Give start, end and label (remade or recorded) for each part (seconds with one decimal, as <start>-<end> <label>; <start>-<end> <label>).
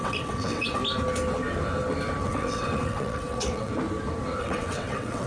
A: 0.0-0.8 remade; 0.8-2.2 recorded; 2.2-3.7 remade; 3.7-4.4 recorded; 4.4-5.3 remade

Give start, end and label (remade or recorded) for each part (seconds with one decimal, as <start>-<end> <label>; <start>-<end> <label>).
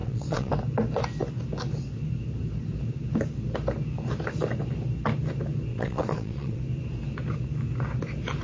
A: 0.0-0.5 remade; 0.5-5.7 recorded; 5.7-6.6 remade; 6.6-8.4 recorded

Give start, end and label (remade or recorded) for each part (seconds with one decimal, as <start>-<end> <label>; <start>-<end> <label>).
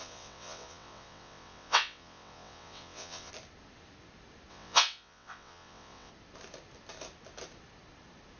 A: 0.0-3.3 remade; 3.3-4.5 recorded; 4.5-6.1 remade; 6.1-8.4 recorded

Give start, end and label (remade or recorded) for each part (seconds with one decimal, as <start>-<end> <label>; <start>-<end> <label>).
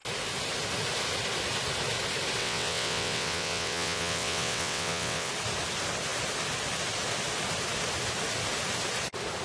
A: 0.0-2.4 recorded; 2.4-5.3 remade; 5.3-9.4 recorded